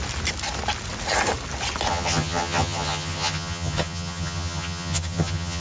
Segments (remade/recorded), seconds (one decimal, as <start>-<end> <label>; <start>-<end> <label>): 0.0-1.9 recorded; 1.9-5.6 remade